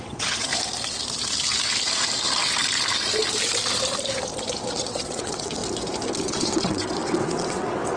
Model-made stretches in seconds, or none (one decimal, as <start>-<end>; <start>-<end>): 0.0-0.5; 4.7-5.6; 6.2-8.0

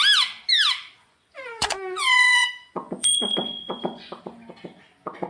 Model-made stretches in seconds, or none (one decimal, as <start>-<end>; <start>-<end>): 1.0-4.2

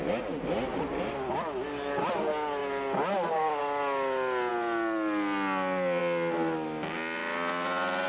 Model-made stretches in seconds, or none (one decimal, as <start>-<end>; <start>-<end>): none